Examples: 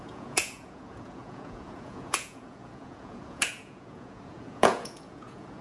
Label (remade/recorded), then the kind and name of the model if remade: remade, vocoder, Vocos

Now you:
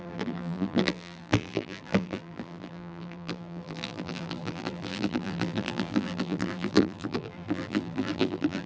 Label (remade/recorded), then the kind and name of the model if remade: remade, vocoder, BigVGAN v2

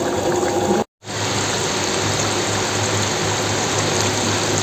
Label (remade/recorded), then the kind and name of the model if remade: recorded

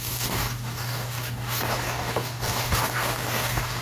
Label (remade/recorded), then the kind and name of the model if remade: remade, codec, DAC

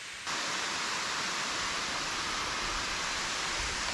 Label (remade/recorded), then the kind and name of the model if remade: recorded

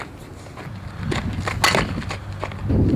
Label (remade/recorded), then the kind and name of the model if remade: recorded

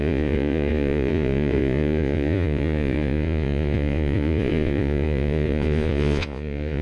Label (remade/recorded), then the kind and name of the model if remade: remade, vocoder, Vocos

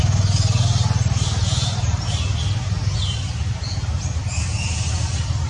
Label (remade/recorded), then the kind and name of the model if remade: recorded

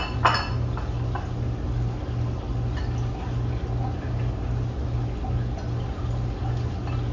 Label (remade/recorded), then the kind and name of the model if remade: recorded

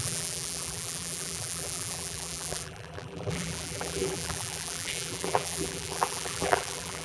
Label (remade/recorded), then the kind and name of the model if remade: remade, vocoder, BigVGAN v2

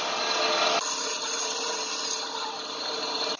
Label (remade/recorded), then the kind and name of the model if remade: recorded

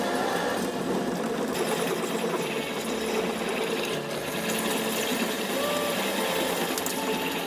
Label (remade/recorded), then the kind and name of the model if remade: recorded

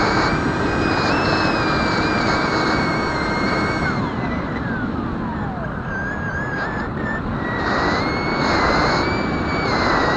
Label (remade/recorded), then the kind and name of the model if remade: recorded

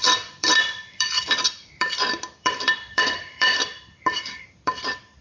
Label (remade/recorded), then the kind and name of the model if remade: remade, vocoder, BigVGAN v2